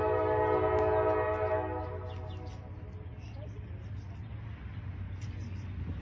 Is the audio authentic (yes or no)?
yes